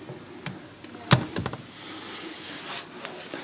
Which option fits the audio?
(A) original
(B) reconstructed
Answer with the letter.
A